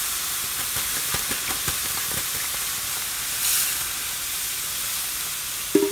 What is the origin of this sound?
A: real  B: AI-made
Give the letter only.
A